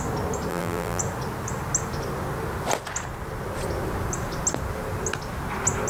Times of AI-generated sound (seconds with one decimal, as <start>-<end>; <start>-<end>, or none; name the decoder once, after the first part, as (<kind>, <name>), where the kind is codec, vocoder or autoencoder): 0.5-1.0 (vocoder, BigVGAN v2)